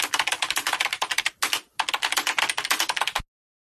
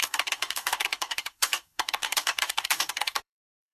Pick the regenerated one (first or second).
second